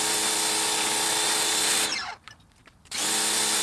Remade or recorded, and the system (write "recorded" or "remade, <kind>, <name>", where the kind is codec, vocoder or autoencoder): remade, vocoder, BigVGAN v2